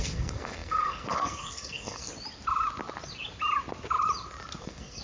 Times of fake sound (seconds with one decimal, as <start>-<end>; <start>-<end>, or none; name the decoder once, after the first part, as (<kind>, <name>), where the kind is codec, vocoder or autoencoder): 0.0-2.1 (codec, SNAC); 4.6-5.0